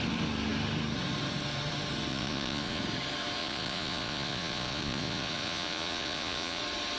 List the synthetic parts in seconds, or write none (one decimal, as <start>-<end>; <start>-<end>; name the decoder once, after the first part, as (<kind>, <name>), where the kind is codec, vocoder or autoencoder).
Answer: 2.1-2.8 (vocoder, Vocos); 3.4-6.6

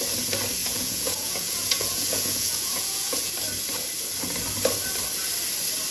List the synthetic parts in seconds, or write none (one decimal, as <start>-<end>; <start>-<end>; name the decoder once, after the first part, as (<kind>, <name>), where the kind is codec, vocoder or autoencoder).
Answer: 0.6-3.3 (vocoder, Vocos)

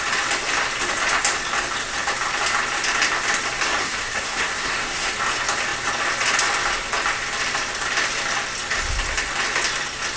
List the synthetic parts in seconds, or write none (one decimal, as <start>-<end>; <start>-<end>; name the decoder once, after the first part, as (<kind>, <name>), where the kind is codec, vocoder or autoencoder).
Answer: 3.8-5.1 (codec, SNAC)

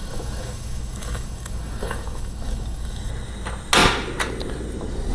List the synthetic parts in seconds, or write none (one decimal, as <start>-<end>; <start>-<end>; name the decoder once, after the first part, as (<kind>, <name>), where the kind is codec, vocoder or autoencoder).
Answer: 0.0-3.1 (autoencoder, DAC-VAE)

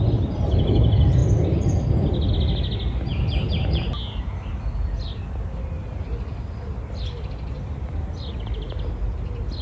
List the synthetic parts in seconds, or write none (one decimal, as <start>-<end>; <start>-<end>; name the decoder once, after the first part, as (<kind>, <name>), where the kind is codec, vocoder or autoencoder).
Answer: none

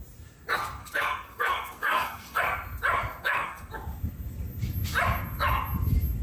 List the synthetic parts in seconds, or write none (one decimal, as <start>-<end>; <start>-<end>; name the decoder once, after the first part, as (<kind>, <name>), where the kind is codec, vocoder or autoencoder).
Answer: 0.8-2.4 (codec, SNAC); 3.2-3.7

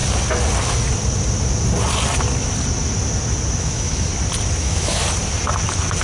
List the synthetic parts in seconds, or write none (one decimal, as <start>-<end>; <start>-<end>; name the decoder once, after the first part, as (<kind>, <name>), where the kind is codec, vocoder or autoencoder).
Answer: 3.6-4.1 (autoencoder, DAC-VAE); 4.6-5.0